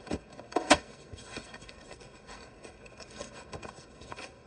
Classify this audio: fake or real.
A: fake